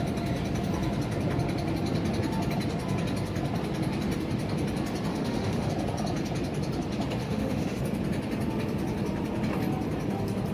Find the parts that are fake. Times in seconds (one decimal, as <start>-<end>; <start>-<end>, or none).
5.1-5.7; 7.2-7.8